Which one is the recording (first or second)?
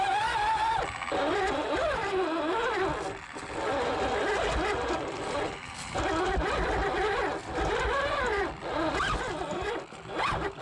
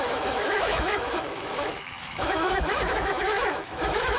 first